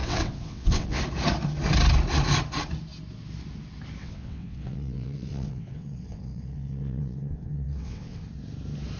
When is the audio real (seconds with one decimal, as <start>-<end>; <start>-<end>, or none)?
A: 1.0-4.0; 8.2-9.0